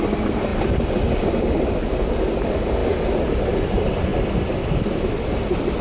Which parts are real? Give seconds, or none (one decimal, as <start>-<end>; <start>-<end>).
0.0-0.5; 2.1-4.1; 5.2-5.8